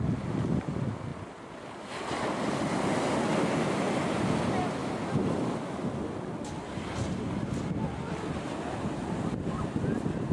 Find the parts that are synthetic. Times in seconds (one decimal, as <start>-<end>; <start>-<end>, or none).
1.1-1.7